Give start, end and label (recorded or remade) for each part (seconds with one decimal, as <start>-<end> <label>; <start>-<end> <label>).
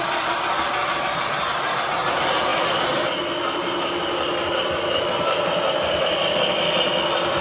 0.0-7.4 recorded